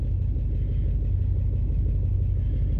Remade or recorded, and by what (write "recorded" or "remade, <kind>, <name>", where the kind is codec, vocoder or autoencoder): recorded